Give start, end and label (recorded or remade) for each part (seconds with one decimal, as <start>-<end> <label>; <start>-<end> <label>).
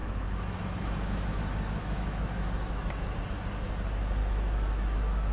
0.0-3.2 remade; 3.2-4.2 recorded; 4.2-5.3 remade